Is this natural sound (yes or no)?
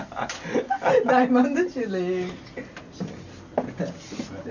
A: yes